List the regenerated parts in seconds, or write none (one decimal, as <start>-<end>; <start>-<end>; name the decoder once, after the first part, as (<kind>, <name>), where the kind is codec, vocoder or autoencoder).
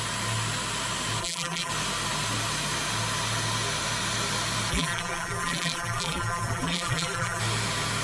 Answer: 1.2-1.7 (vocoder, BigVGAN v2); 4.7-7.4